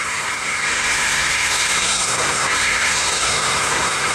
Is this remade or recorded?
remade